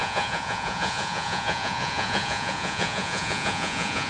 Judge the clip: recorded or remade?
remade